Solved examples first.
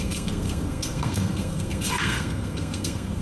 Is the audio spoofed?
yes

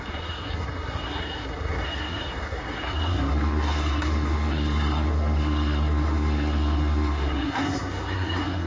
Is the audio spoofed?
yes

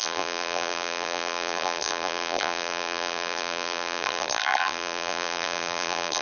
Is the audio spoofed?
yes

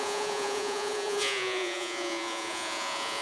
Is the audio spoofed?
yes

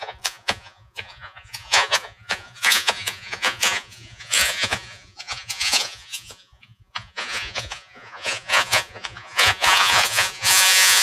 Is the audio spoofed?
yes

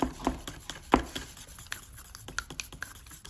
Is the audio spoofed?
no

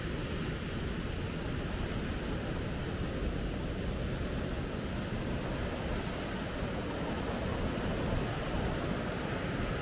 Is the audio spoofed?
no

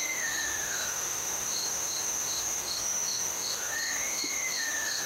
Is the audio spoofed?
yes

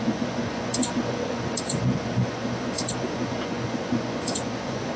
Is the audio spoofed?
yes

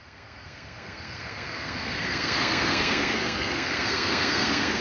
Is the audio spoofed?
yes